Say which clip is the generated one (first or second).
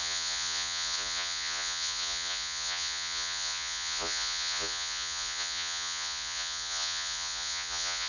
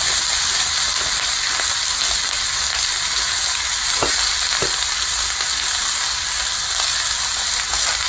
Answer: first